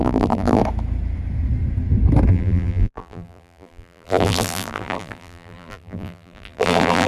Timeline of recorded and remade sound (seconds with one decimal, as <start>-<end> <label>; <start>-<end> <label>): 0.0-0.6 remade; 0.6-2.3 recorded; 2.3-7.1 remade